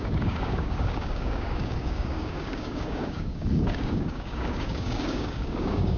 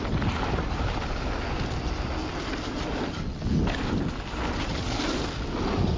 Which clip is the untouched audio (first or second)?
second